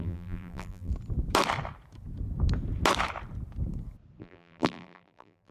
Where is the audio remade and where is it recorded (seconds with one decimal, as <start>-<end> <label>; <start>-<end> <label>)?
0.0-0.9 remade; 0.9-4.2 recorded; 4.2-5.5 remade